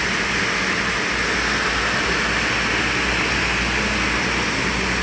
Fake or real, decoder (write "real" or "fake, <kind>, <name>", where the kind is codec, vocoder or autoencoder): real